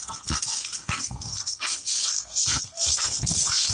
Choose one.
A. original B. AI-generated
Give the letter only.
B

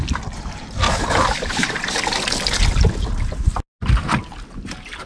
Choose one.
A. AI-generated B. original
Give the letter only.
B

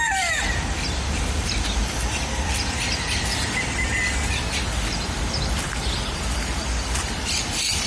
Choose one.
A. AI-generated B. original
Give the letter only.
A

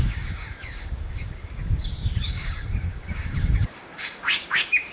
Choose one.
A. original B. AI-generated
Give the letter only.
B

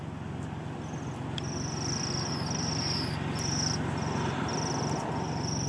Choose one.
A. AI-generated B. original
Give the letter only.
B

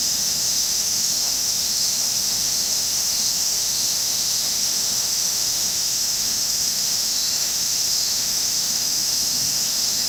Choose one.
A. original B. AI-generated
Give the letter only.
B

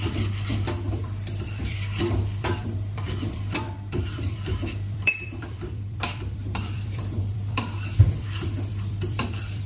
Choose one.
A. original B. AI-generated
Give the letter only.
B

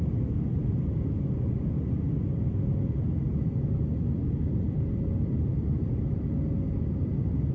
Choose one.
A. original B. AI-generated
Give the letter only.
A